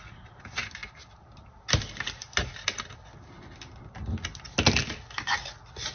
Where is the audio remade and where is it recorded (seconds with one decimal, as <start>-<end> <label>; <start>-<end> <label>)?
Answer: 0.0-5.9 recorded